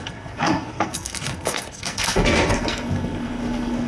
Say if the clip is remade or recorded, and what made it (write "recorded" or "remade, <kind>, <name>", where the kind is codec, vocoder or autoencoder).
remade, codec, SNAC